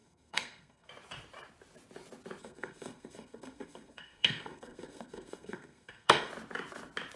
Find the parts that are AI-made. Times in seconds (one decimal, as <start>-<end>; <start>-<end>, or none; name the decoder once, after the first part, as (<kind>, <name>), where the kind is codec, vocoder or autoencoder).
0.0-0.9 (codec, SNAC); 2.4-6.3